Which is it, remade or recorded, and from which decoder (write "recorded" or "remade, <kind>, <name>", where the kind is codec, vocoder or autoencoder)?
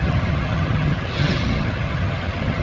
remade, vocoder, HiFi-GAN